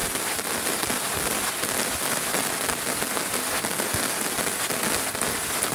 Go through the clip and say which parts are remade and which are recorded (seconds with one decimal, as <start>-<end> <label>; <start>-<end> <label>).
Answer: 0.0-5.7 recorded